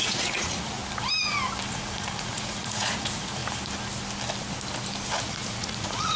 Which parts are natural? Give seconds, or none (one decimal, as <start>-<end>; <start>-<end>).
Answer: 0.8-1.7; 3.4-5.2